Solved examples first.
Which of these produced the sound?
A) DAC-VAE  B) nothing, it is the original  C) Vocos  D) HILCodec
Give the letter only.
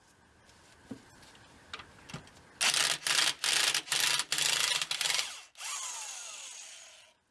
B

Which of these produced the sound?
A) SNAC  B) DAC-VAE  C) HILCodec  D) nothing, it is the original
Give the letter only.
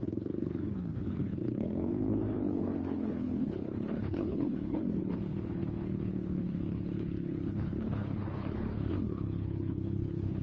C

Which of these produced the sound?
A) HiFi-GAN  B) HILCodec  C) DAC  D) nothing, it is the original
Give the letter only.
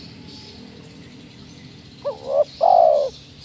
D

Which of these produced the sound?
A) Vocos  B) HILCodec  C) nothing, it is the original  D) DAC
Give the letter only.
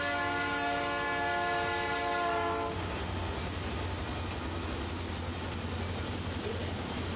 C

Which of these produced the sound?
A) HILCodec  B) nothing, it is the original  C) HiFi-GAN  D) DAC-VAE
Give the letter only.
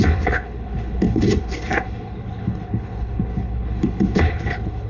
A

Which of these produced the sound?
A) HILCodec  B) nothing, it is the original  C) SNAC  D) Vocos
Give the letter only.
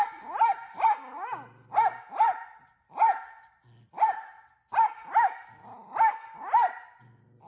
B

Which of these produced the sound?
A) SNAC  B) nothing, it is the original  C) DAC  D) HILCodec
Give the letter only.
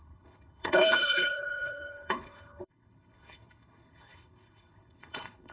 D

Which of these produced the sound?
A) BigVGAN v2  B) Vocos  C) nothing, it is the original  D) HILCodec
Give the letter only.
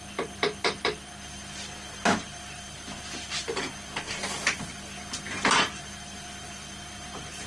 C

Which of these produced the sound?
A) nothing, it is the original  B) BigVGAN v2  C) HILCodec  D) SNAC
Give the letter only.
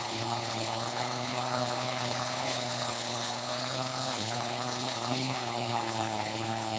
C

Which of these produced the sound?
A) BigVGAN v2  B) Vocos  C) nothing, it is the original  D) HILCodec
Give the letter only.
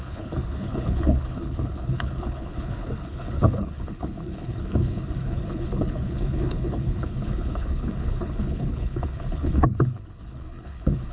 D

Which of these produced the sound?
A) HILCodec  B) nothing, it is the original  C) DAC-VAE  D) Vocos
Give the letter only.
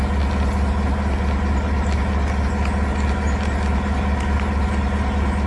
B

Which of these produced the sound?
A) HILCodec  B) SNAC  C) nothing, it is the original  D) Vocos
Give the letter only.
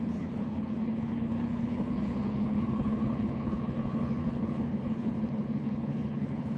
A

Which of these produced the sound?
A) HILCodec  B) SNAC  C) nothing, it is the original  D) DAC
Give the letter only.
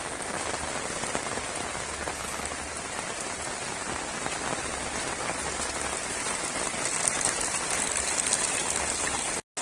C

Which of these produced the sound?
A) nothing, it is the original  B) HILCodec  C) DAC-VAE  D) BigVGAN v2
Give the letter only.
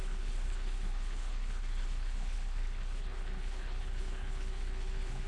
B